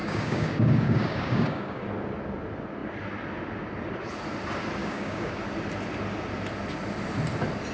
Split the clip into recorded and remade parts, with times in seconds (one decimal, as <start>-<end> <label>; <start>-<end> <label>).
0.0-1.9 remade; 1.9-4.8 recorded; 4.8-5.4 remade; 5.4-7.7 recorded